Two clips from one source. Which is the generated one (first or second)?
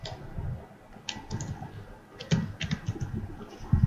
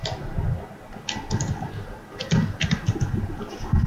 second